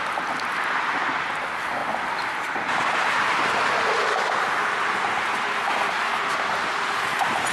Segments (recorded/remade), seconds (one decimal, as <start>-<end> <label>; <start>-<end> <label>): 0.0-7.5 recorded